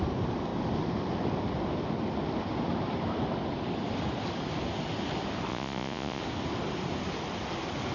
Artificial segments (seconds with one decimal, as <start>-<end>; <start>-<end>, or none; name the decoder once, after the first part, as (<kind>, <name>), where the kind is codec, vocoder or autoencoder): 5.5-6.2 (vocoder, Vocos)